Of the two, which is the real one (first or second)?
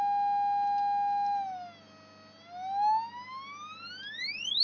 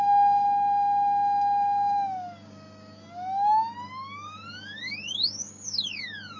first